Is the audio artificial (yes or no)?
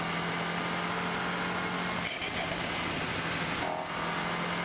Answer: no